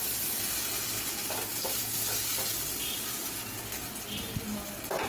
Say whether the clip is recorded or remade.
recorded